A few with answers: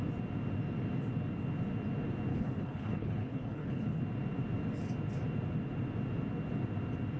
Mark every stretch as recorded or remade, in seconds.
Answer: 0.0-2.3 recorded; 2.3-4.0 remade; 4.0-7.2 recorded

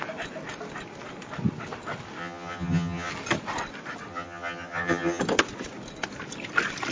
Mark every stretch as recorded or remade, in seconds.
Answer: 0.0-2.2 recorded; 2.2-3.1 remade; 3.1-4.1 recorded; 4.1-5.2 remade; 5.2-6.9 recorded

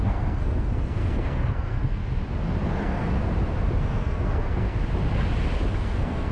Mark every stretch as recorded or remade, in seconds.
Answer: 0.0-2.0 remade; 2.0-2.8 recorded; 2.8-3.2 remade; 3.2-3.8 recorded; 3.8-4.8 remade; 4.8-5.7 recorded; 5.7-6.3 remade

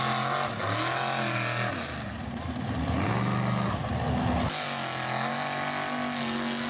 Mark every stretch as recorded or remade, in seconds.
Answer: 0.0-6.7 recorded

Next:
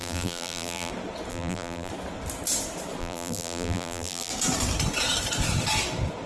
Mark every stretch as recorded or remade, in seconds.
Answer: 0.0-0.9 remade; 0.9-1.3 recorded; 1.3-1.9 remade; 1.9-3.0 recorded; 3.0-4.3 remade; 4.3-6.3 recorded

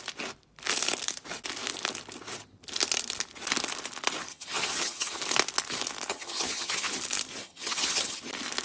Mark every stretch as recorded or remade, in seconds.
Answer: 0.0-4.3 recorded; 4.3-5.2 remade; 5.2-6.1 recorded; 6.1-7.0 remade; 7.0-7.4 recorded; 7.4-8.2 remade; 8.2-8.6 recorded